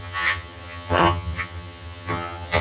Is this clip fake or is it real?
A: fake